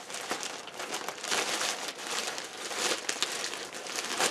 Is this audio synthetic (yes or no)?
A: no